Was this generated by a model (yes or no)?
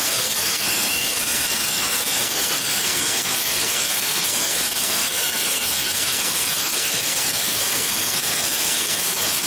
yes